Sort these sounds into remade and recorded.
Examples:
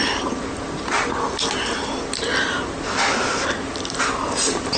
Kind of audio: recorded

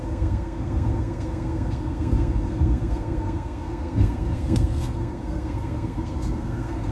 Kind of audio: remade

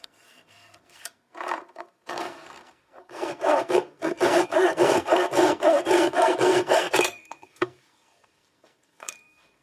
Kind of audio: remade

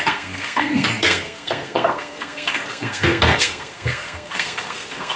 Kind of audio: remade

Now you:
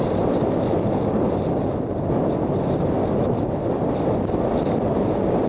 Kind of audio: recorded